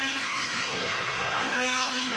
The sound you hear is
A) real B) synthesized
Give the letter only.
B